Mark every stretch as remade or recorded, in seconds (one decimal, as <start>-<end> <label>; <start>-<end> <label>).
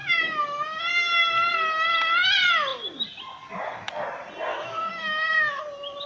0.0-0.8 remade; 0.8-4.5 recorded; 4.5-5.6 remade; 5.6-6.1 recorded